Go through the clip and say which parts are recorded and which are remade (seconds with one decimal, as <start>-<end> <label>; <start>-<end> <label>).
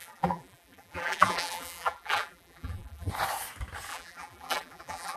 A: 0.0-3.1 remade; 3.1-3.9 recorded; 3.9-5.2 remade